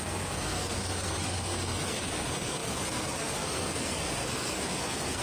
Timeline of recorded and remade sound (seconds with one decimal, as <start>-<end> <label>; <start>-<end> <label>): 0.0-5.2 remade